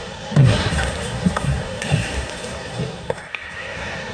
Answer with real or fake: fake